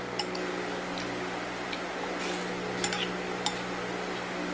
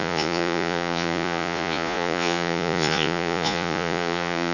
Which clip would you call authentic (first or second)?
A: first